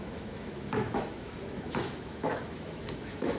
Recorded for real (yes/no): no